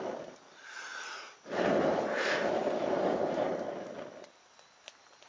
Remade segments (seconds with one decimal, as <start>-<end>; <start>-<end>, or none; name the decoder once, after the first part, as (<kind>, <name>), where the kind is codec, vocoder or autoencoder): none